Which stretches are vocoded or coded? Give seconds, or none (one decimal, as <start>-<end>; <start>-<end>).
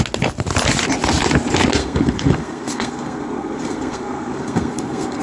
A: 1.8-5.2